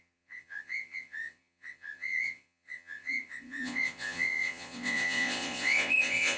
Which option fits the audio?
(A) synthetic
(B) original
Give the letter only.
A